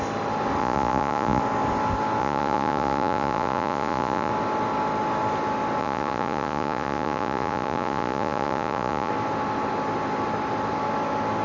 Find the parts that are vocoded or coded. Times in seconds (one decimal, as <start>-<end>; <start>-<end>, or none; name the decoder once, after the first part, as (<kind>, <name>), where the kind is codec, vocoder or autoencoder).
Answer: 0.6-1.4 (vocoder, Vocos); 2.2-4.3; 5.8-9.1